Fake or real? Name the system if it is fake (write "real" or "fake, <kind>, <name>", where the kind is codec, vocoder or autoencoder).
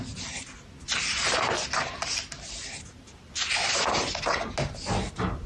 real